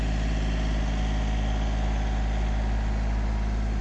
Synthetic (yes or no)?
no